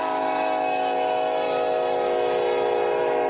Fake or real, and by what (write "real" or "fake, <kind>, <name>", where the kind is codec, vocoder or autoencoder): real